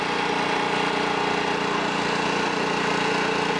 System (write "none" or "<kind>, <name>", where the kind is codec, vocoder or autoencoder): none